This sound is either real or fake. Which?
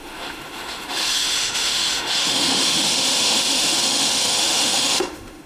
fake